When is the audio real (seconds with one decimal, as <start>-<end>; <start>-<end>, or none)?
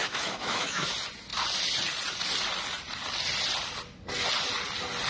0.9-5.1